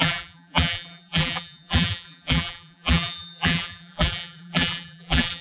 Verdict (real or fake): fake